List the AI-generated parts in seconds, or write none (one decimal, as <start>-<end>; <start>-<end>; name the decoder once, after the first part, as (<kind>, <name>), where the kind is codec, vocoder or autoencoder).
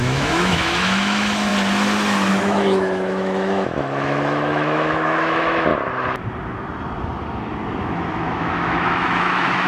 0.0-1.5 (autoencoder, DAC-VAE); 2.3-5.7; 7.8-9.7